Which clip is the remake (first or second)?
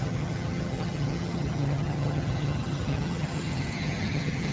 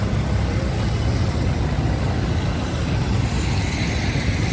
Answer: first